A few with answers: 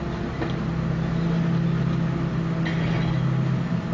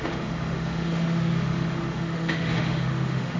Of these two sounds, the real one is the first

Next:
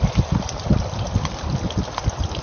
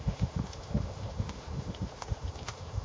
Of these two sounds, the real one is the first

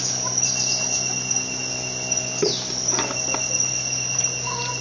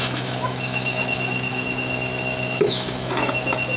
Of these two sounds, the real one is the first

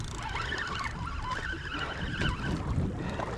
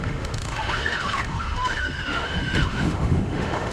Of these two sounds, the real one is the first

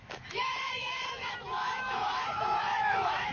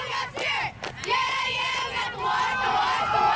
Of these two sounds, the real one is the second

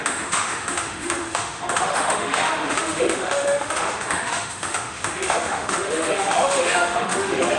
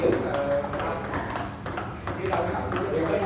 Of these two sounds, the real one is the second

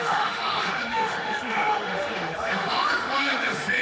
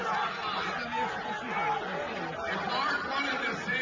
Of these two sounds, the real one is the second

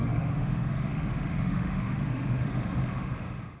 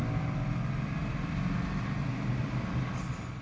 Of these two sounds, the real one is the second